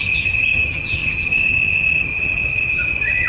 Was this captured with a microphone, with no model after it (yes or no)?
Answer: no